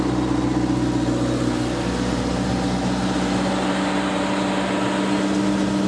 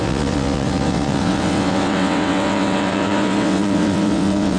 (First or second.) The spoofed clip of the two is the second